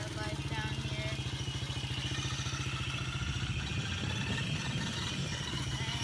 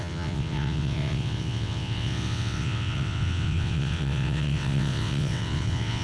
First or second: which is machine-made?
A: second